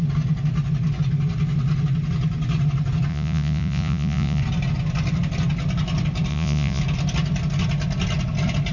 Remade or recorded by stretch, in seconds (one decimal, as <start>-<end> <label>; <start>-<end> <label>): 0.0-3.1 recorded; 3.1-4.4 remade; 4.4-6.3 recorded; 6.3-6.8 remade; 6.8-8.7 recorded